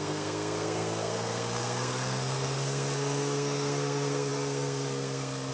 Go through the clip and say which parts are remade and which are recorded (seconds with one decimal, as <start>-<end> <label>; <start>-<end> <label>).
0.0-5.5 remade

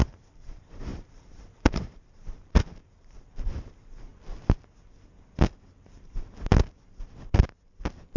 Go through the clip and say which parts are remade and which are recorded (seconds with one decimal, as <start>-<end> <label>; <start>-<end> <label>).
0.0-4.1 remade; 4.1-8.2 recorded